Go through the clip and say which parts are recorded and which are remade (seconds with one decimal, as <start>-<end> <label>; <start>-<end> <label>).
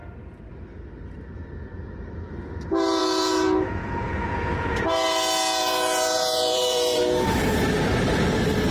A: 0.0-3.0 recorded; 3.0-4.8 remade; 4.8-5.6 recorded; 5.6-7.0 remade; 7.0-8.7 recorded